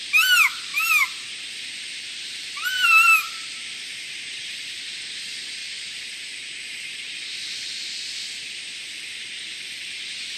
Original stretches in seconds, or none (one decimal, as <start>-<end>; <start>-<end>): 0.0-0.7; 4.8-5.6; 7.2-7.7; 10.0-10.4